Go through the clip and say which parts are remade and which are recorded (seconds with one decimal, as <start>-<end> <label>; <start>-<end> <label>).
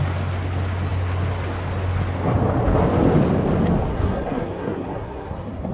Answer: 0.0-3.9 recorded; 3.9-5.7 remade